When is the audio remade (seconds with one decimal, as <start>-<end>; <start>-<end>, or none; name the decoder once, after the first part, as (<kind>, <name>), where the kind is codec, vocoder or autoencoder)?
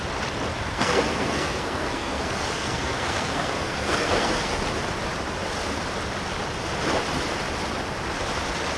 0.5-4.6 (codec, SNAC)